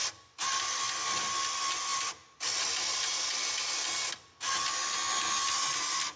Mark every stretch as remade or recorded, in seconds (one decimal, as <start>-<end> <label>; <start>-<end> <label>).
0.0-6.2 recorded